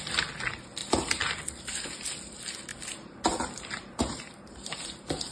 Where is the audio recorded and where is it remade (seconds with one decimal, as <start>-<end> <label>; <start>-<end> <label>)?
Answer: 0.0-5.3 recorded